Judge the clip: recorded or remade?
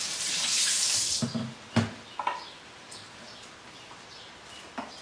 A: recorded